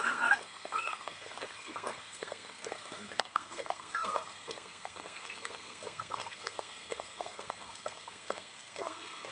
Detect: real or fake fake